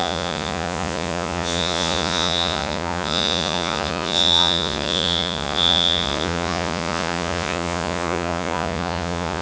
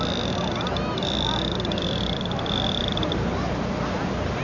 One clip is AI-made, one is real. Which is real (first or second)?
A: second